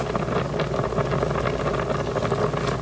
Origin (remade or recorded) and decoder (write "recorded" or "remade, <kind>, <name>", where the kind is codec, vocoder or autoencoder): recorded